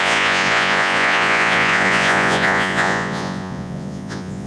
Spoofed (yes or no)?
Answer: yes